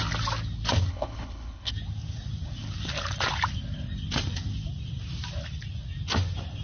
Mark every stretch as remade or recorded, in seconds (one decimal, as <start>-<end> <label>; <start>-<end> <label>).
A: 0.0-0.9 recorded; 0.9-1.7 remade; 1.7-6.6 recorded